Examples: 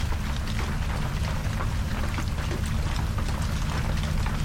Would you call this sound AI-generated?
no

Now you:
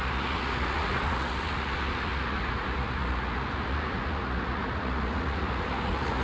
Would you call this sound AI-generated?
yes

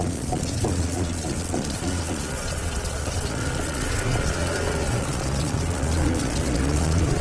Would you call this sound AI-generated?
yes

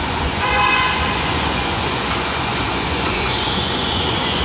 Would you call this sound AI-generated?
yes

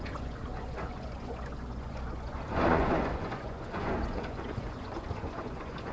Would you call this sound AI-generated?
yes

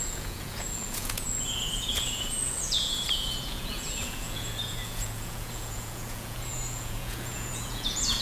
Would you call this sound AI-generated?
yes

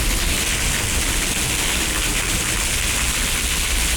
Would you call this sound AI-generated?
no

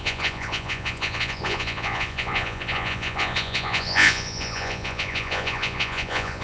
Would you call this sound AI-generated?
yes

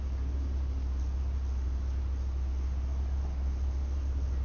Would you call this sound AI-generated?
no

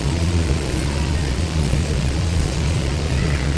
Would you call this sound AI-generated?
yes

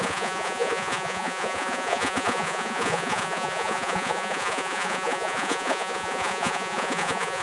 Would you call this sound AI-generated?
yes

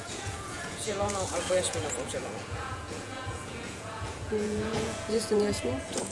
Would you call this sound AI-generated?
yes